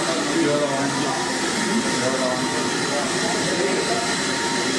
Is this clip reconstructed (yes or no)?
no